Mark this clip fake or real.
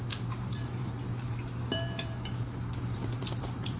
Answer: fake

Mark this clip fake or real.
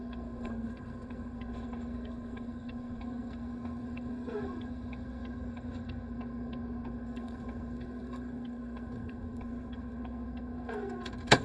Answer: fake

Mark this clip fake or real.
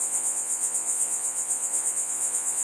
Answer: fake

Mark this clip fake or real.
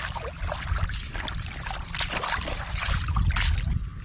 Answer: real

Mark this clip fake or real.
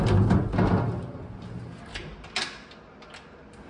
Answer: real